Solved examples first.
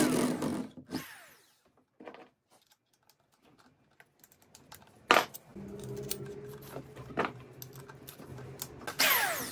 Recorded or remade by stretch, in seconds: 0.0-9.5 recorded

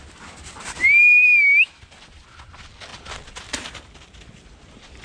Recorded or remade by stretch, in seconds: 0.0-1.0 recorded; 1.0-1.8 remade; 1.8-5.0 recorded

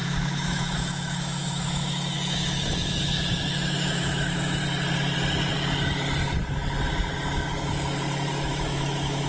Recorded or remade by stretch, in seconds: 0.0-4.6 remade; 4.6-8.5 recorded; 8.5-9.3 remade